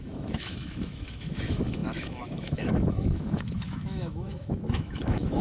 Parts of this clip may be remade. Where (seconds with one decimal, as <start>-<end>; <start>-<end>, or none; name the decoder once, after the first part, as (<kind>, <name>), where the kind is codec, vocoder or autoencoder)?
0.0-5.4 (autoencoder, DAC-VAE)